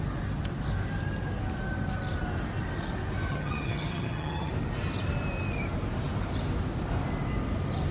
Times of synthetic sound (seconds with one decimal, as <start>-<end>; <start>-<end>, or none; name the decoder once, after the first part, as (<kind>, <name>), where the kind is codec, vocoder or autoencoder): 3.3-4.5 (vocoder, HiFi-GAN)